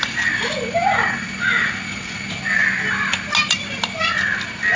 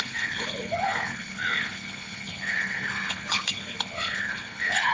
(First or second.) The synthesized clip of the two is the second